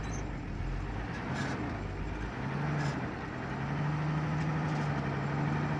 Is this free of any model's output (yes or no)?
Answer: yes